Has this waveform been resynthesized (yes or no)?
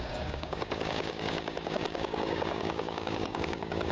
yes